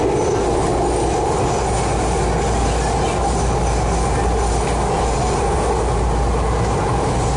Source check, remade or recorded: recorded